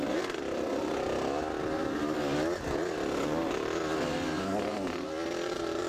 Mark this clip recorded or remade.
recorded